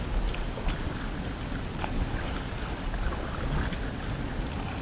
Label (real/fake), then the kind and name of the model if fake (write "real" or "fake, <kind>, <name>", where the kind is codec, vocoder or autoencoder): real